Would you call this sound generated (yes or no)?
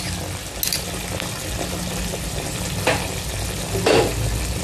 no